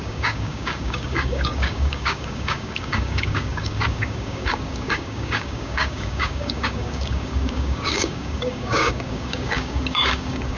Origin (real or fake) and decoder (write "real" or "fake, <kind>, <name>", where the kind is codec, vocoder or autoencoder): fake, codec, DAC